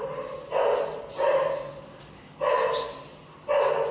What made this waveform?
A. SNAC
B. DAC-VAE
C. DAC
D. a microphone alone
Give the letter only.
D